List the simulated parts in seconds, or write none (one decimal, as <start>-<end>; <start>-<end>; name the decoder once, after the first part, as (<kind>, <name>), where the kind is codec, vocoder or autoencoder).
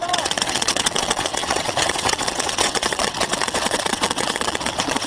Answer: 0.0-5.1 (vocoder, WaveNeXt)